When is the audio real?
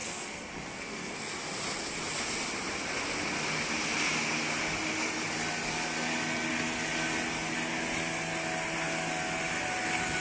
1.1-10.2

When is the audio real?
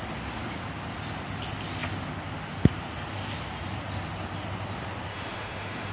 0.0-5.1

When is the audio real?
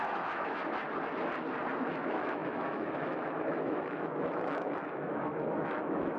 0.6-1.8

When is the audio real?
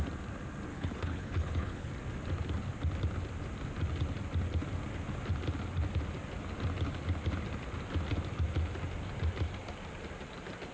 0.0-0.7; 1.9-10.7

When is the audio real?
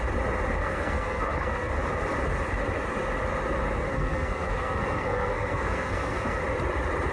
0.0-0.6; 1.7-3.9; 6.4-7.1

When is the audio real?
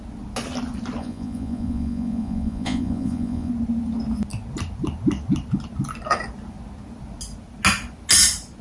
0.0-1.0; 3.5-8.6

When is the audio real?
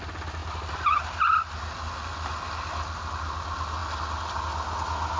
0.0-5.2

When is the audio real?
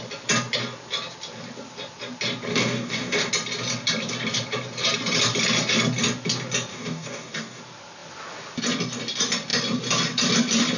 0.0-2.5; 3.3-6.7; 7.6-10.8